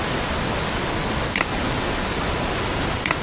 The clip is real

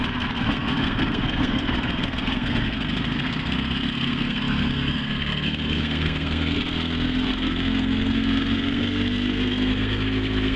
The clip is fake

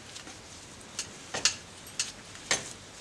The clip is real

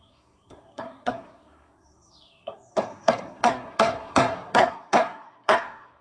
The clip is fake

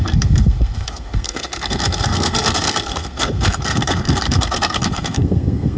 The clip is fake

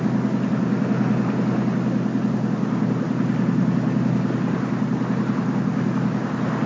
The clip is real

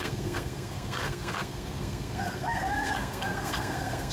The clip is fake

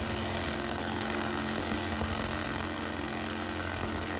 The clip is fake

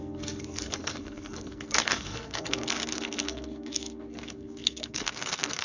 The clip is fake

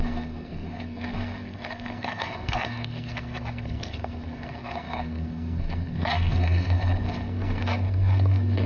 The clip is fake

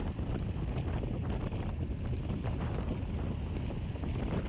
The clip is real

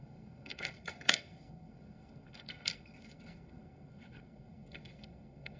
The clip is fake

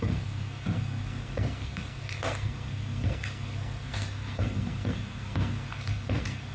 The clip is fake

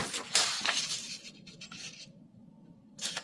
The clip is real